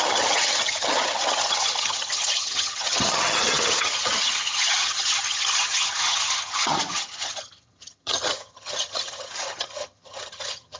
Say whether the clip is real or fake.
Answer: fake